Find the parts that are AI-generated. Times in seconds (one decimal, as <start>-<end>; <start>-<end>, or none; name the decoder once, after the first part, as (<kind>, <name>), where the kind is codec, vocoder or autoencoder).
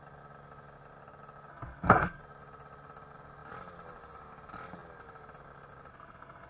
1.5-2.2 (codec, SNAC); 5.9-6.5